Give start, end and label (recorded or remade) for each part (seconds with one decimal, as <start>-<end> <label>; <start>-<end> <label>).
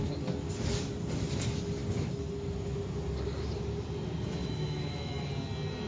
0.0-4.4 recorded; 4.4-5.3 remade; 5.3-5.9 recorded